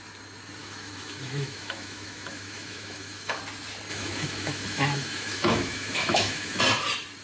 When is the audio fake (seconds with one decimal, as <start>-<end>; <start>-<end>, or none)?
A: 0.6-3.4; 3.9-6.6